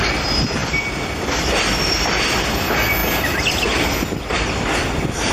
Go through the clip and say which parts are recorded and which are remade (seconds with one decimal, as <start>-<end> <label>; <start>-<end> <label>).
0.0-5.3 recorded